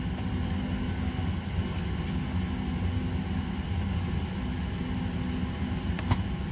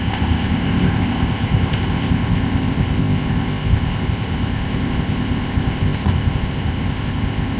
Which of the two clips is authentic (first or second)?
first